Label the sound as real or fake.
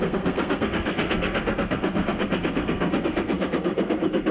fake